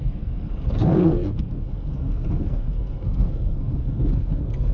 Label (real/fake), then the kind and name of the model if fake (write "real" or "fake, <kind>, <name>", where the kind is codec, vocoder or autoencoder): fake, codec, SNAC